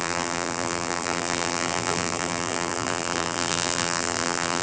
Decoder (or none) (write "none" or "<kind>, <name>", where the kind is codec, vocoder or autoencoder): vocoder, BigVGAN v2